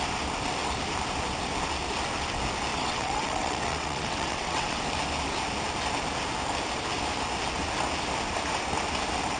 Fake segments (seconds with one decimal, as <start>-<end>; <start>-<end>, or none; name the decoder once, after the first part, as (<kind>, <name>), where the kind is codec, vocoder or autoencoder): 2.7-4.8 (vocoder, WaveNeXt)